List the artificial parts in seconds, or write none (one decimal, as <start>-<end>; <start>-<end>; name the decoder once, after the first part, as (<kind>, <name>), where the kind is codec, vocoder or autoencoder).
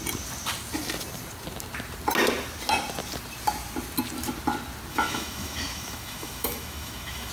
4.9-7.3 (autoencoder, DAC-VAE)